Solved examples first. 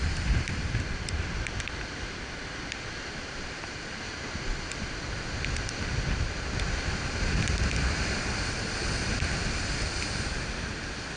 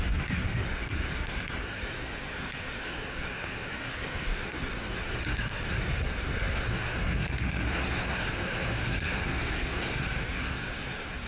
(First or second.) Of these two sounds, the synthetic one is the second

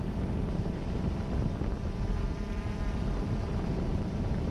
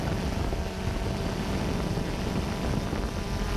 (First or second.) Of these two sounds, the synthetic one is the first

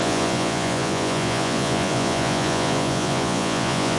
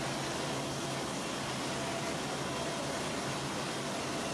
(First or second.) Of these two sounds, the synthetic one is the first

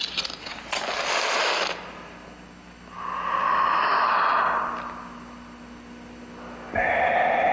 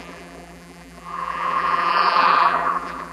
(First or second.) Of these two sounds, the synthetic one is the second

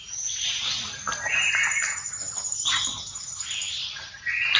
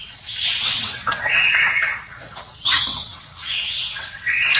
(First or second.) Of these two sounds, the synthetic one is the second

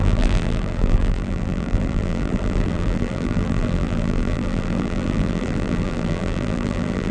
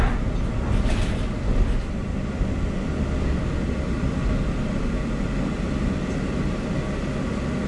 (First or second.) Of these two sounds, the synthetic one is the first